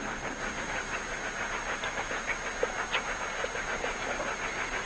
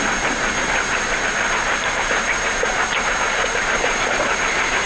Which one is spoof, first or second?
second